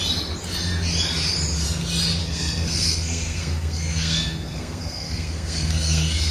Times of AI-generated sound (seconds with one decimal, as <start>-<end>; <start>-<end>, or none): 2.2-6.3